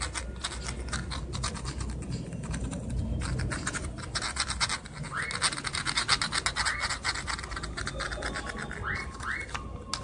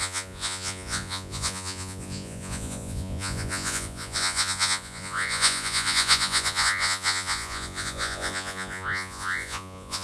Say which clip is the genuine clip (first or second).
first